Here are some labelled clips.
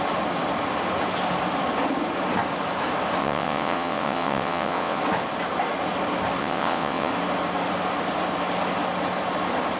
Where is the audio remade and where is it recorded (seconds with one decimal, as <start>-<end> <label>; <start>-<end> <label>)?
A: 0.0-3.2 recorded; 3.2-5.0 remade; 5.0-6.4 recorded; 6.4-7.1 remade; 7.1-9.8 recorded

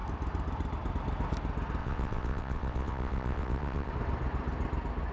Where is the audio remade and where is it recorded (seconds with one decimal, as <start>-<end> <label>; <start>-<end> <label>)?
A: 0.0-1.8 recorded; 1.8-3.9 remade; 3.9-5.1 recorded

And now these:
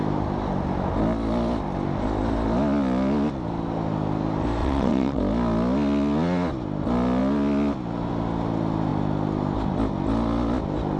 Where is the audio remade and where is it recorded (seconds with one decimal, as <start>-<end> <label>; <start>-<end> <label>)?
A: 0.0-4.6 recorded; 4.6-5.2 remade; 5.2-11.0 recorded

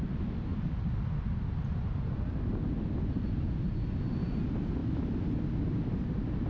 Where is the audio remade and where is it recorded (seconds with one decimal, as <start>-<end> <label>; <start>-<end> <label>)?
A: 0.0-6.5 recorded

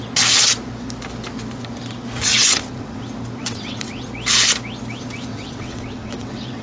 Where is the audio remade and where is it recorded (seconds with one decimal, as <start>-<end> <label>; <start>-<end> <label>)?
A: 0.0-2.3 recorded; 2.3-3.0 remade; 3.0-3.4 recorded; 3.4-4.1 remade; 4.1-5.3 recorded; 5.3-6.6 remade

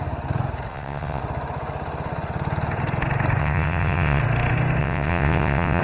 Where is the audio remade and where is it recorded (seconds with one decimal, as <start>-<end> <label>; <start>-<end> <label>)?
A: 0.0-0.7 recorded; 0.7-1.2 remade; 1.2-3.4 recorded; 3.4-4.2 remade; 4.2-4.8 recorded; 4.8-5.8 remade

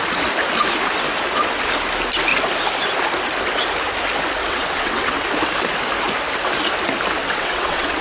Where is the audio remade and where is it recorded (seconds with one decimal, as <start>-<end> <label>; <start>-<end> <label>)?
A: 0.0-4.4 recorded; 4.4-5.3 remade; 5.3-7.2 recorded; 7.2-8.0 remade